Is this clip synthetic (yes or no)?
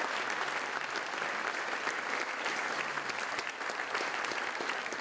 no